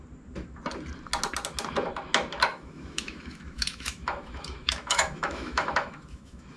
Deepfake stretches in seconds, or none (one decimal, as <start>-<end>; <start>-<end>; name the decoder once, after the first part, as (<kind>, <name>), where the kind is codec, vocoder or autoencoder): 2.5-6.6 (autoencoder, DAC-VAE)